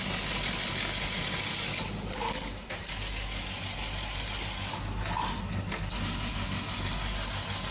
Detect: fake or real real